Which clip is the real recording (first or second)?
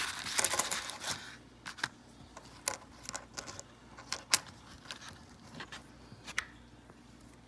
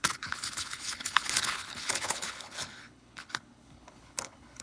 first